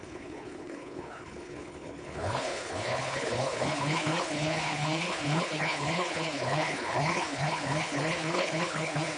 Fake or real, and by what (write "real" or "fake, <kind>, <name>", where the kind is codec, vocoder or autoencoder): fake, codec, HILCodec